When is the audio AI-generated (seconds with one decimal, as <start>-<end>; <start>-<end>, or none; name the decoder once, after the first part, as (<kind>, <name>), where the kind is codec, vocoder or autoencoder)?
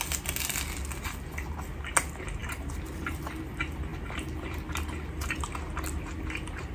none